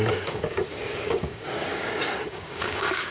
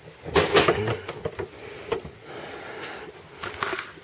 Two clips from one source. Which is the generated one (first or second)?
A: first